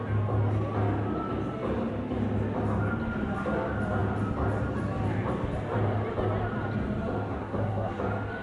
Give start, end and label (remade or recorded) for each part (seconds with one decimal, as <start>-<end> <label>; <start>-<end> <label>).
0.0-7.3 recorded; 7.3-8.0 remade; 8.0-8.4 recorded